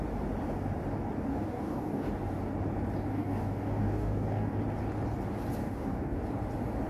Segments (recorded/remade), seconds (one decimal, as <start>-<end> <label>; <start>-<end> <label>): 0.0-1.3 recorded; 1.3-2.1 remade; 2.1-3.1 recorded; 3.1-4.6 remade; 4.6-5.6 recorded; 5.6-6.2 remade; 6.2-6.9 recorded

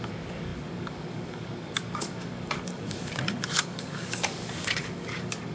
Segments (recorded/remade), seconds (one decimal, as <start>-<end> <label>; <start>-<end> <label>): 0.0-5.5 remade

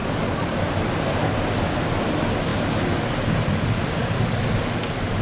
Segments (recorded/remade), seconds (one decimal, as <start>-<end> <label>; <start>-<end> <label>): 0.0-0.6 remade; 0.6-4.0 recorded; 4.0-4.5 remade; 4.5-5.2 recorded

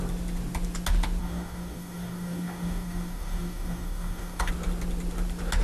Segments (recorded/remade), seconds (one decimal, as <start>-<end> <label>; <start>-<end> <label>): 0.0-1.2 recorded; 1.2-4.5 remade; 4.5-5.6 recorded

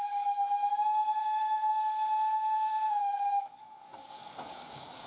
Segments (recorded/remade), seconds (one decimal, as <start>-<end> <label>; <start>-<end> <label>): 0.0-0.6 remade; 0.6-1.2 recorded; 1.2-1.7 remade; 1.7-3.0 recorded; 3.0-5.1 remade

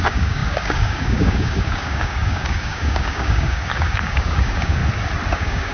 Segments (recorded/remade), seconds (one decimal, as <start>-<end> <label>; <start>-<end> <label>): 0.0-4.8 remade; 4.8-5.3 recorded; 5.3-5.7 remade

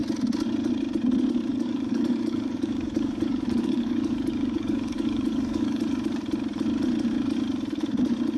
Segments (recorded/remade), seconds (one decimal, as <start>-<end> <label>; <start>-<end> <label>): 0.0-1.5 recorded; 1.5-5.8 remade; 5.8-8.4 recorded